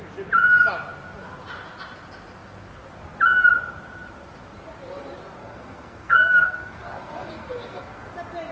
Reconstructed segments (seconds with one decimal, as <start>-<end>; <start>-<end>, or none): 5.4-8.1